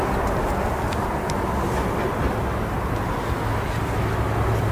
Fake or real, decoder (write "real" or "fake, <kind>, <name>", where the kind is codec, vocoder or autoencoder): real